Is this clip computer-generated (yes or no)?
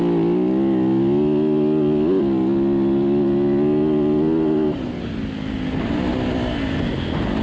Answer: no